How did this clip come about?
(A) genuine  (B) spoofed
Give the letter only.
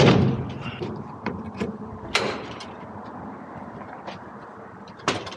B